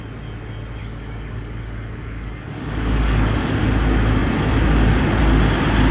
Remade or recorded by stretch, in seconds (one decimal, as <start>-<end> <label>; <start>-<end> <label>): 0.0-0.8 recorded; 0.8-3.6 remade; 3.6-5.9 recorded